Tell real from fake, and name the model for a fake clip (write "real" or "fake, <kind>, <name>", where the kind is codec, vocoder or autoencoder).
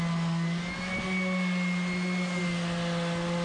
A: real